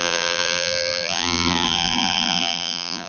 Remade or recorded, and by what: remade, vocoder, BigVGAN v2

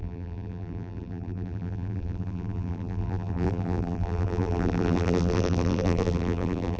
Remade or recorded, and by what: remade, vocoder, BigVGAN v2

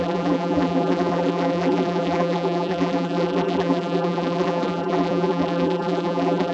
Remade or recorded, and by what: remade, vocoder, BigVGAN v2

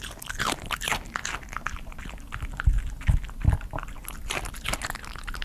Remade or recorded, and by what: recorded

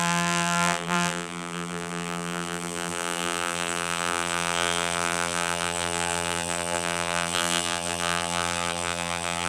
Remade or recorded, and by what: remade, vocoder, BigVGAN v2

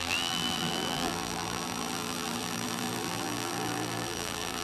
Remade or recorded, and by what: remade, vocoder, BigVGAN v2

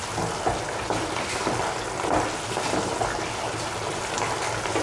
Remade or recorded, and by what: recorded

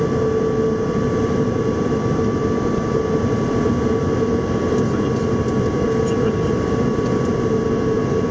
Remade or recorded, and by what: recorded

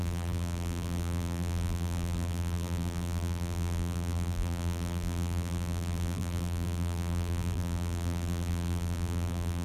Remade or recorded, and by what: remade, vocoder, BigVGAN v2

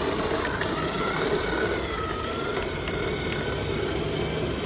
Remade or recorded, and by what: recorded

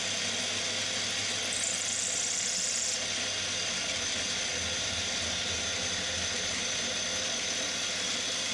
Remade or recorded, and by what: recorded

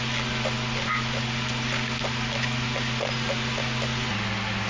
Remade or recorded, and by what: recorded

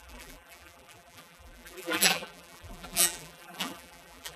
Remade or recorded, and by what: remade, vocoder, BigVGAN v2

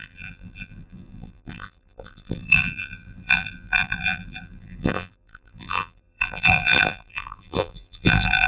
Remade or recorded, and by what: remade, vocoder, BigVGAN v2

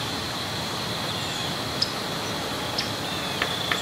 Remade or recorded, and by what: recorded